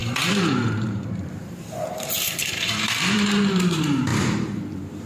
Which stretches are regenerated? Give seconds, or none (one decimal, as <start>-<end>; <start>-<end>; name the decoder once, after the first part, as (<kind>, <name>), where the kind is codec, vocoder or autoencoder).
0.0-5.1 (vocoder, BigVGAN v2)